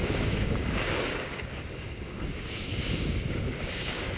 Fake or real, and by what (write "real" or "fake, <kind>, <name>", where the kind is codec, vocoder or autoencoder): fake, codec, DAC